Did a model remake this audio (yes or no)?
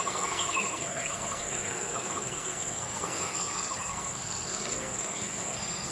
yes